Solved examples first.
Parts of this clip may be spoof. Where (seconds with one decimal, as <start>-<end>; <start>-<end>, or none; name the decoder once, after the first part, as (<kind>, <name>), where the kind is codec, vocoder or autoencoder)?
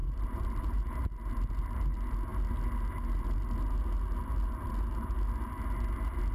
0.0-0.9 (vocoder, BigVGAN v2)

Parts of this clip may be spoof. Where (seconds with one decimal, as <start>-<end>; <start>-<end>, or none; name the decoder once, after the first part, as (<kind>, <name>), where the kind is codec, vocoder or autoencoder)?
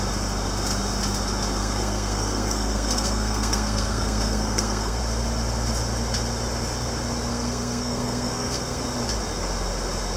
1.6-5.0 (codec, SNAC); 7.3-8.8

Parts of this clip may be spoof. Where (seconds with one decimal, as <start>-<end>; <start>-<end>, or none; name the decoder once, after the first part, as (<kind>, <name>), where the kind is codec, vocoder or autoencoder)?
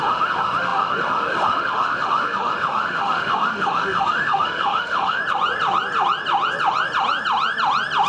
0.0-5.2 (autoencoder, DAC-VAE)